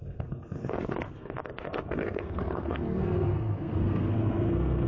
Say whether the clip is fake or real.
fake